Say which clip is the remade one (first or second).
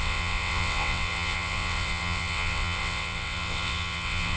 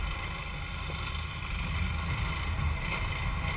first